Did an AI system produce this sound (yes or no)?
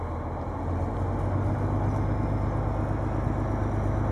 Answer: no